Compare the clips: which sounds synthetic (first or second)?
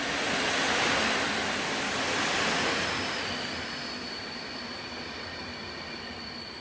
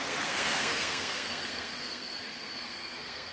second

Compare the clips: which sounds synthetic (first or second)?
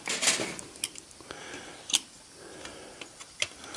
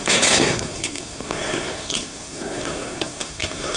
second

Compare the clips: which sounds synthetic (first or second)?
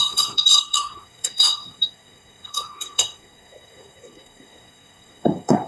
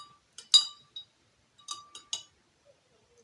first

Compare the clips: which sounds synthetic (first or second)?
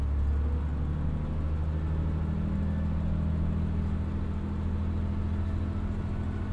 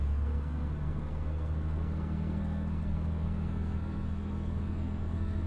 second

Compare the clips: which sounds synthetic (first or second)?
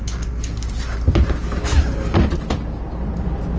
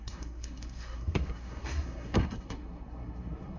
second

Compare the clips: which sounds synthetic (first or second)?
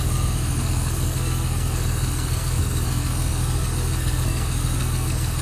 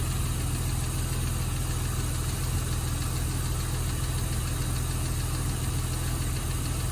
first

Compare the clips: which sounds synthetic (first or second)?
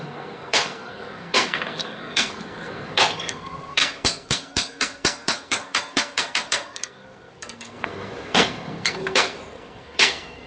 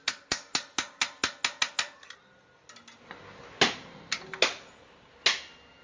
first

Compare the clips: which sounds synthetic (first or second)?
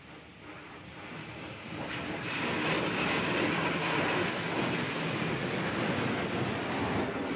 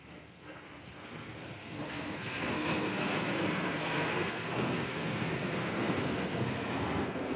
second